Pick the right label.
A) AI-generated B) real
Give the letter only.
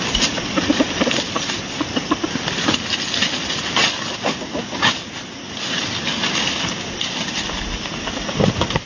B